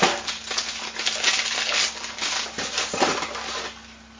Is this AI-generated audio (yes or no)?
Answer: no